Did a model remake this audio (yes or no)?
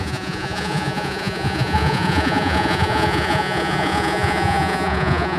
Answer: yes